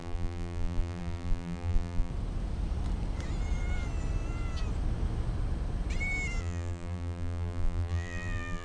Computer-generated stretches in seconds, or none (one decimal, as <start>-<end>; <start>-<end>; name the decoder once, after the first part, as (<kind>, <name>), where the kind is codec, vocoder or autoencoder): 0.0-2.1 (vocoder, BigVGAN v2); 6.4-8.6